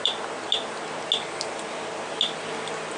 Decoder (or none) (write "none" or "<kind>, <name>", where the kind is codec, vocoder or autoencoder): none